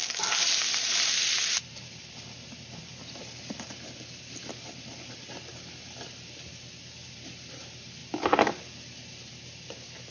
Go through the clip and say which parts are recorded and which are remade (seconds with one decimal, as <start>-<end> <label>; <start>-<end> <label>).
0.0-10.1 recorded